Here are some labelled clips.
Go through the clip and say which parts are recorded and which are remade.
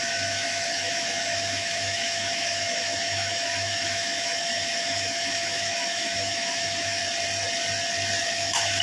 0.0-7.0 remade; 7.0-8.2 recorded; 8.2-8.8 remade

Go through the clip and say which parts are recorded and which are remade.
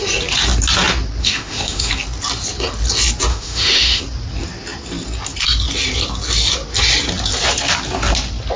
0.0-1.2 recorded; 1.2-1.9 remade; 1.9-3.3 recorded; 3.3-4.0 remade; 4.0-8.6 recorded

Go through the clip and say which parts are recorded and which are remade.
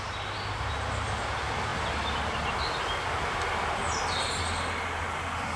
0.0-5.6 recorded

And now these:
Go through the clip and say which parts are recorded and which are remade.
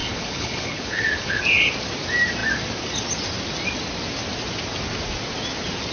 0.0-1.4 remade; 1.4-5.9 recorded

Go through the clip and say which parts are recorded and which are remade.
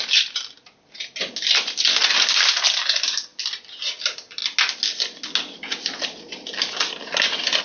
0.0-7.6 recorded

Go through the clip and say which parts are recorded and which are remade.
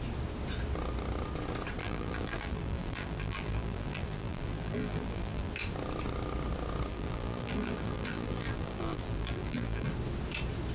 0.0-1.8 recorded; 1.8-5.5 remade; 5.5-6.9 recorded; 6.9-9.9 remade; 9.9-10.7 recorded